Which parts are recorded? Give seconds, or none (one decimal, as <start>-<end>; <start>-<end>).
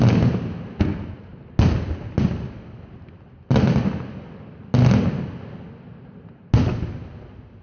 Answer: 0.0-7.6